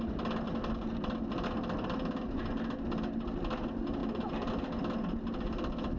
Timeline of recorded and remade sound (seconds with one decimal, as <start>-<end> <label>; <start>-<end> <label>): 0.0-4.0 recorded; 4.0-4.5 remade; 4.5-6.0 recorded

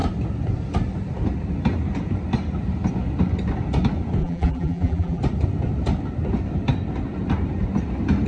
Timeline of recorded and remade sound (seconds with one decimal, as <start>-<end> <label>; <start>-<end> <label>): 0.0-4.2 recorded; 4.2-5.2 remade; 5.2-8.3 recorded

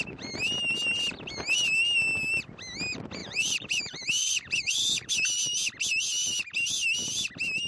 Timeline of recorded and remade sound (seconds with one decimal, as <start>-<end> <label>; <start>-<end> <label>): 0.0-3.2 recorded; 3.2-5.1 remade; 5.1-7.7 recorded

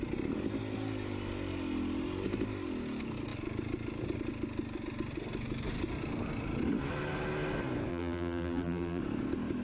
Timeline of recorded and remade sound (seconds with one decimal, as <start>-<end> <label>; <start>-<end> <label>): 0.0-7.9 recorded; 7.9-9.0 remade; 9.0-9.6 recorded

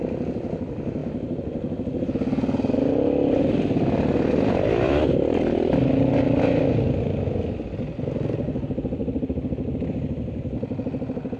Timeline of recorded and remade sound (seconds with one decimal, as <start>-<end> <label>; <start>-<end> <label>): 0.0-9.0 recorded; 9.0-9.7 remade; 9.7-11.4 recorded